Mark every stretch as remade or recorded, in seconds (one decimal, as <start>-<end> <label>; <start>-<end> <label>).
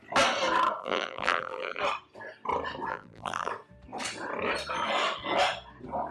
0.0-0.8 recorded; 0.8-1.8 remade; 1.8-2.9 recorded; 2.9-3.5 remade; 3.5-6.1 recorded